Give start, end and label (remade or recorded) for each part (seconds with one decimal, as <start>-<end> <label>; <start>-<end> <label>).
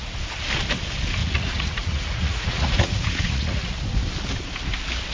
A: 0.0-1.2 recorded; 1.2-3.7 remade; 3.7-5.1 recorded